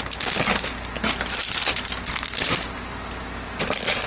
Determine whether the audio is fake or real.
real